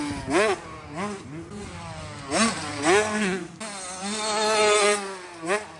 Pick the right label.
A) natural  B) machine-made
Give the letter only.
A